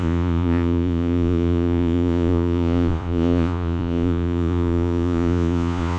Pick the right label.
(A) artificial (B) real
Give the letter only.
A